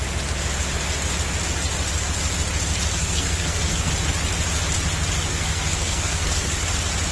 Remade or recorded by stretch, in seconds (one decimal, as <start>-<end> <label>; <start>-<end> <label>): 0.0-3.0 recorded; 3.0-3.9 remade; 3.9-5.3 recorded; 5.3-6.5 remade; 6.5-7.1 recorded